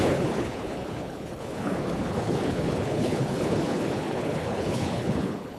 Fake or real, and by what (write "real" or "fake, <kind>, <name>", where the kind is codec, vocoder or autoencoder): fake, codec, HILCodec